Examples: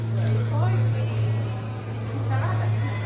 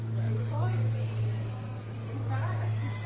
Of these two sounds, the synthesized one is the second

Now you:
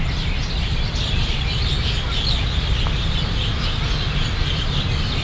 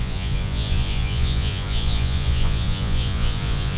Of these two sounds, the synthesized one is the second